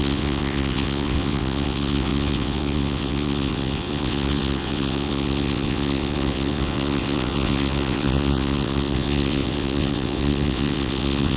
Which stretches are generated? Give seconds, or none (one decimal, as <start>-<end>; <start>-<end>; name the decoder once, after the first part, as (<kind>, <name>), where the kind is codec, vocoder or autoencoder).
0.0-11.4 (vocoder, WaveNeXt)